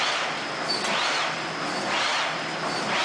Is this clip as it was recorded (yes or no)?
yes